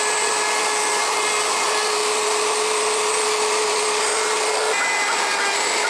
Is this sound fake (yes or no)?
no